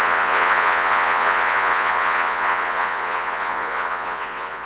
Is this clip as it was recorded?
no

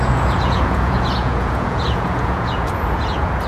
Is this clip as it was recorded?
no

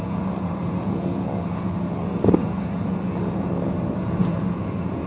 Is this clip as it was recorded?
no